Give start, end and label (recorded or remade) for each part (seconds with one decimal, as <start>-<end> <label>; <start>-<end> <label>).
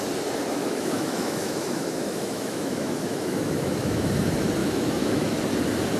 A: 0.0-0.6 recorded; 0.6-4.1 remade; 4.1-4.6 recorded; 4.6-5.4 remade; 5.4-6.0 recorded